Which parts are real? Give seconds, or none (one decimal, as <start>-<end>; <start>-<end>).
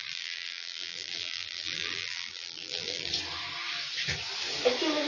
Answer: 3.1-5.1